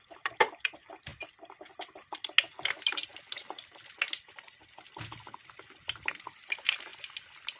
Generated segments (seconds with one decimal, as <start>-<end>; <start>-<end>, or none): none